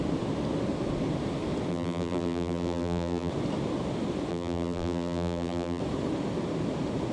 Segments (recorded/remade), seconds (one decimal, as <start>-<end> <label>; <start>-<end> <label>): 0.0-1.7 recorded; 1.7-3.3 remade; 3.3-4.3 recorded; 4.3-5.8 remade; 5.8-7.1 recorded